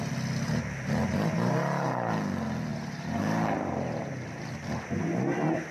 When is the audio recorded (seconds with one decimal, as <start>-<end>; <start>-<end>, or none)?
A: 0.0-2.7; 4.1-5.7